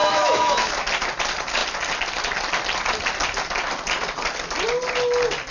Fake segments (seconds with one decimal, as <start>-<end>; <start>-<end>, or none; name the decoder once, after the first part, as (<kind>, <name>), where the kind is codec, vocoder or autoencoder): 0.0-0.7 (autoencoder, DAC-VAE)